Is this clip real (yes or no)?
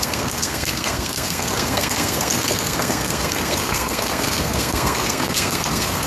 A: no